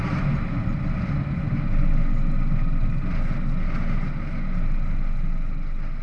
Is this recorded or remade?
recorded